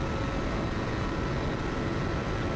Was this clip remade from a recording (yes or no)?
no